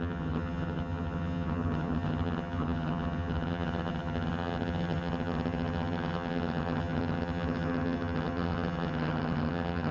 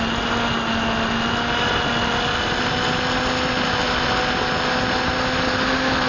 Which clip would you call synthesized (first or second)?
first